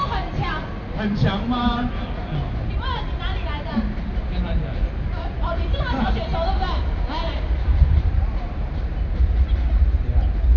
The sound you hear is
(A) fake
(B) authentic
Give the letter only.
B